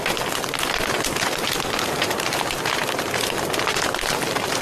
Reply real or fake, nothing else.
real